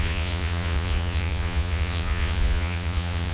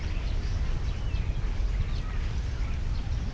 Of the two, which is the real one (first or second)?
second